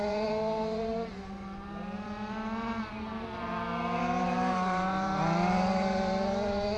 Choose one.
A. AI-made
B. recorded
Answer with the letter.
A